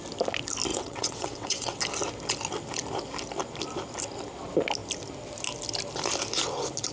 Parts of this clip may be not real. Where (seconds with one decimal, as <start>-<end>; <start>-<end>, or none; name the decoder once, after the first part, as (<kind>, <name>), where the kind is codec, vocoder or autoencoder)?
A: 0.7-1.8 (vocoder, WaveNeXt)